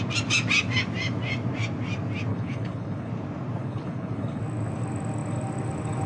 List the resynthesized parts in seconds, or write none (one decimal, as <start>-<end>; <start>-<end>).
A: 2.3-3.1; 3.6-4.4